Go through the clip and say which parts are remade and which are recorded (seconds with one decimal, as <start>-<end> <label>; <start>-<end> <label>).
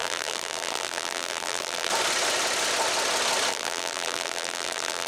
0.0-1.9 remade; 1.9-3.5 recorded; 3.5-5.1 remade